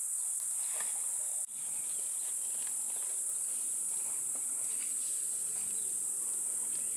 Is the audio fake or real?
fake